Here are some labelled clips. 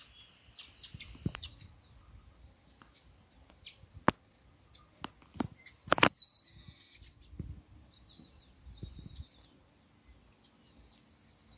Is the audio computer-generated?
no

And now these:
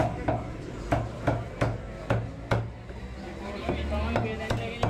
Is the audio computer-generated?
no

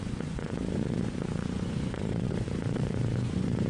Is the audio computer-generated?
yes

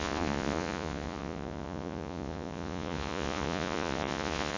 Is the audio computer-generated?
yes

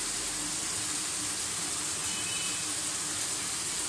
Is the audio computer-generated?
no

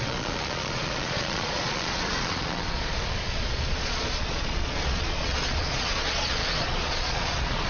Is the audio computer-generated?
yes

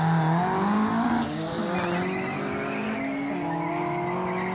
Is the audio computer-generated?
no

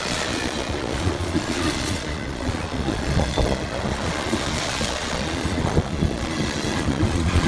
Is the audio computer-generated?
yes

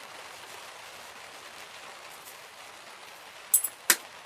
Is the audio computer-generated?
no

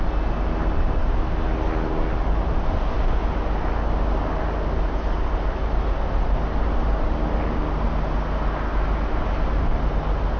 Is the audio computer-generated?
no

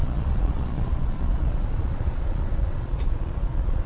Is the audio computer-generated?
yes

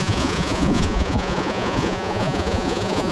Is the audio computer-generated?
yes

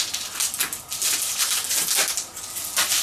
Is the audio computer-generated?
no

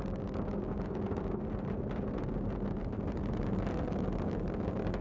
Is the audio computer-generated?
no